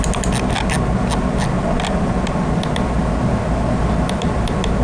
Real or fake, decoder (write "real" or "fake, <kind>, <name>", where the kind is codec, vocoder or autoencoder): real